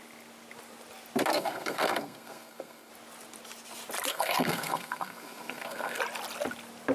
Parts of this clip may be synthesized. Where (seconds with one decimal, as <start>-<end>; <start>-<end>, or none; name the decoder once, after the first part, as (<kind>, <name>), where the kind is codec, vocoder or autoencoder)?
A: 1.3-2.9 (codec, SNAC); 4.1-6.0